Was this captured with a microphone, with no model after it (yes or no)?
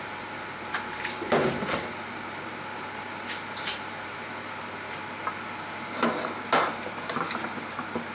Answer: yes